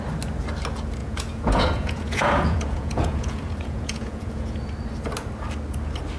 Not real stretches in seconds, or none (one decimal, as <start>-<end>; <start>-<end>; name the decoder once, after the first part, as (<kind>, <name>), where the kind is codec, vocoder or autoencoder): 1.0-4.7 (vocoder, Vocos)